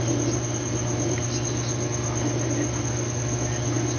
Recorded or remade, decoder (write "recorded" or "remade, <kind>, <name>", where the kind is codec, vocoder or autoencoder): recorded